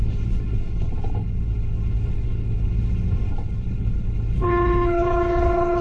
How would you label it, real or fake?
fake